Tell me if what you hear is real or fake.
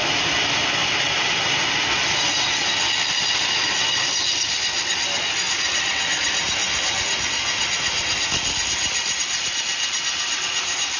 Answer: real